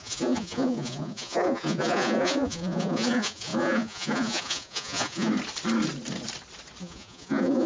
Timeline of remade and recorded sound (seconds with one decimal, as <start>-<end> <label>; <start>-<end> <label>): 0.0-5.3 remade; 5.3-6.8 recorded; 6.8-7.7 remade